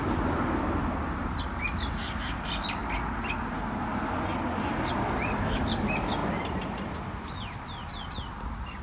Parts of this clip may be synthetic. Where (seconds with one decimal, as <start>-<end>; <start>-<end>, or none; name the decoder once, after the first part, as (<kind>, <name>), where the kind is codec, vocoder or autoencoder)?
none